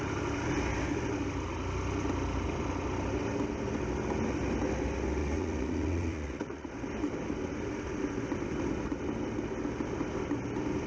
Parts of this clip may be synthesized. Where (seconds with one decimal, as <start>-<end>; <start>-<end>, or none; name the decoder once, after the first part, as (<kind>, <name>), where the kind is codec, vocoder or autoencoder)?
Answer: 5.2-6.7 (vocoder, Vocos)